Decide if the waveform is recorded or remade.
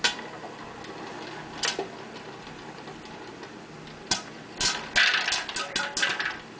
recorded